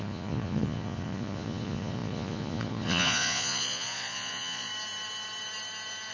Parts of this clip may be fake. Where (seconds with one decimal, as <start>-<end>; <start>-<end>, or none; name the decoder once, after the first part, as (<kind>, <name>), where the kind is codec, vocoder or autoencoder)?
0.0-4.7 (vocoder, Vocos)